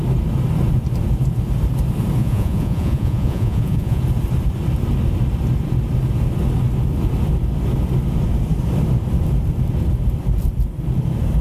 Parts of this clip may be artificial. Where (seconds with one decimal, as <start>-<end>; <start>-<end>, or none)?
2.2-4.0